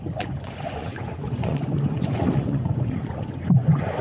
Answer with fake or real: fake